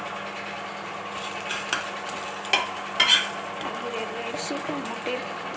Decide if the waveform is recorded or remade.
recorded